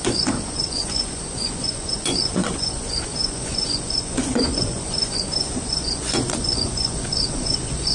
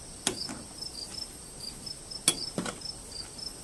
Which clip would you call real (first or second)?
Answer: second